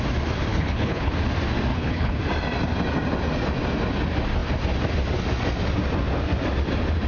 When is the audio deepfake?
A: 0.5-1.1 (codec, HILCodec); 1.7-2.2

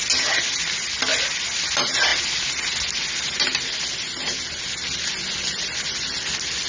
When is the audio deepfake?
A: none